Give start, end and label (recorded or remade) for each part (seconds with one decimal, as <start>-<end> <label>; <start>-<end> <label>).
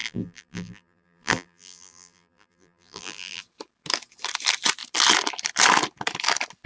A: 0.0-3.4 remade; 3.4-6.7 recorded